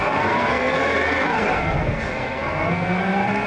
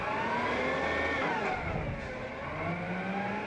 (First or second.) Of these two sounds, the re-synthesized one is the first